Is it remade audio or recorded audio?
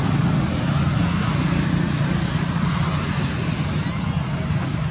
recorded